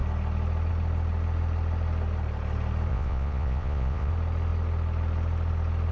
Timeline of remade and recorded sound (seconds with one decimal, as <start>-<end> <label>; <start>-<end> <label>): 0.0-2.9 recorded; 2.9-4.1 remade; 4.1-5.9 recorded